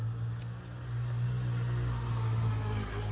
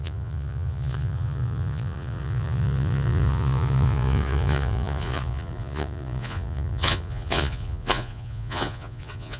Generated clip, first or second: second